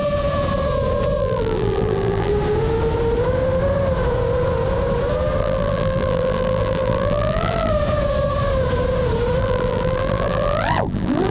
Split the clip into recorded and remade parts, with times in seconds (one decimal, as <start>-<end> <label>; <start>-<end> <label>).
0.0-1.2 recorded; 1.2-2.3 remade; 2.3-5.4 recorded; 5.4-7.7 remade; 7.7-9.4 recorded; 9.4-11.3 remade